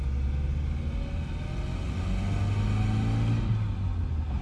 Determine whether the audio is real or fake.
real